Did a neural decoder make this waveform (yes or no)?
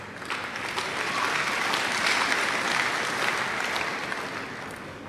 no